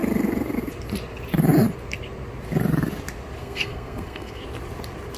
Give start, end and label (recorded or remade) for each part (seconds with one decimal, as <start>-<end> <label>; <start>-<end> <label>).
0.0-3.4 recorded; 3.4-4.4 remade; 4.4-5.2 recorded